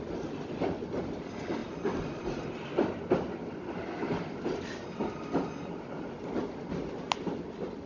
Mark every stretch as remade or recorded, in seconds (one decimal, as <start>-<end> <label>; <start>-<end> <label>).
0.0-7.9 recorded